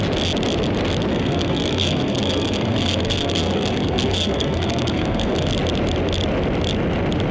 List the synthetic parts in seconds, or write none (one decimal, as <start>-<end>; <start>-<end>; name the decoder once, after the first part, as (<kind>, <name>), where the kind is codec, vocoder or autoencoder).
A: 1.1-5.5 (codec, SNAC)